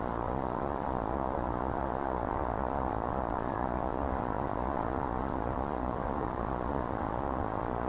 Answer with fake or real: fake